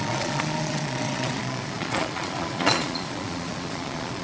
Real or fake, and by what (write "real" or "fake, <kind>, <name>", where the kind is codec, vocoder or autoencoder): fake, vocoder, Vocos